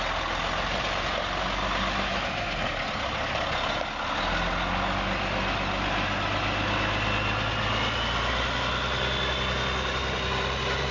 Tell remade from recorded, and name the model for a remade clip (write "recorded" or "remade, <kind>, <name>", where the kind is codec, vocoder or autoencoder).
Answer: recorded